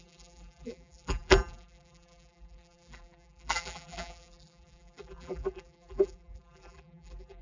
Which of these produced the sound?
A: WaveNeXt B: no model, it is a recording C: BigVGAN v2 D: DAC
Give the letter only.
C